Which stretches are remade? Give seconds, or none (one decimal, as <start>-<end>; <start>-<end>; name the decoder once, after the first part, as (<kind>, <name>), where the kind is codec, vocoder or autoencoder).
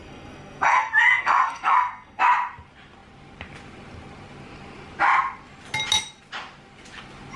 0.0-2.2 (codec, SNAC)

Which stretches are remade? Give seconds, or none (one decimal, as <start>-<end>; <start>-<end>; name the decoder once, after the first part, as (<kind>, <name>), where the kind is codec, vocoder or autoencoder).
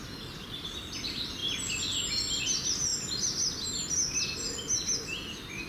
none